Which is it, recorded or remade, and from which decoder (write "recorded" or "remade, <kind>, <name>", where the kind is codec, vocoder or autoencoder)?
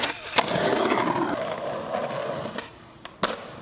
recorded